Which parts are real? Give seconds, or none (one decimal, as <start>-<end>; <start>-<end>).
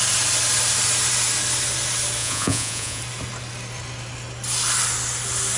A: 0.0-2.2; 3.0-5.6